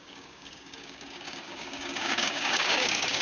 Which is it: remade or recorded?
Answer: remade